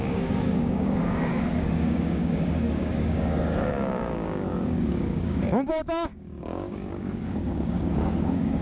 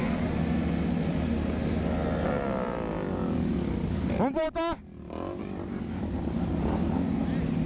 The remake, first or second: first